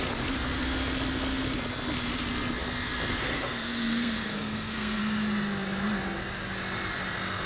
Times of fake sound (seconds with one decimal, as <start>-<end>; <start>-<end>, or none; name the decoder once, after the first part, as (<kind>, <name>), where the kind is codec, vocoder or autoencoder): 3.1-5.0 (codec, SNAC)